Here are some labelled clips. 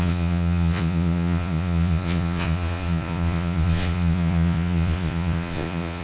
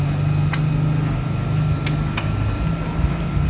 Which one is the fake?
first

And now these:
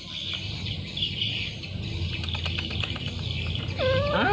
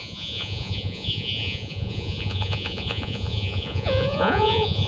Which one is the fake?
second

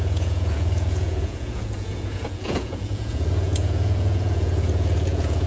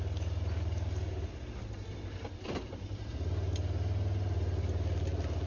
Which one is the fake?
first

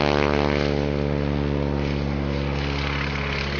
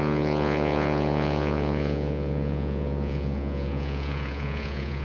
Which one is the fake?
second